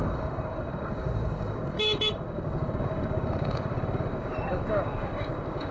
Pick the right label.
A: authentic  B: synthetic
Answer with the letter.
B